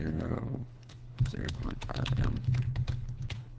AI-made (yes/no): yes